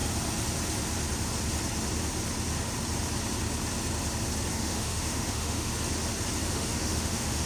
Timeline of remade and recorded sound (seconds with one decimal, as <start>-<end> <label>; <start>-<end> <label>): 0.0-4.5 recorded; 4.5-5.7 remade; 5.7-6.5 recorded; 6.5-7.5 remade